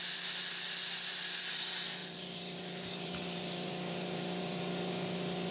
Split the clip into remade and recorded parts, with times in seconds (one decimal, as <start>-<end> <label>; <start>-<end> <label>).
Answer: 0.0-2.0 recorded; 2.0-4.6 remade; 4.6-5.5 recorded